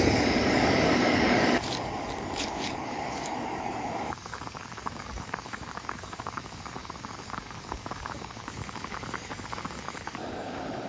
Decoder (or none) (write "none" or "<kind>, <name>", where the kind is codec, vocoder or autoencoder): codec, DAC